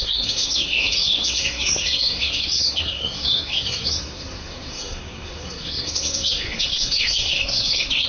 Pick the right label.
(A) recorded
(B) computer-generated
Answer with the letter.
B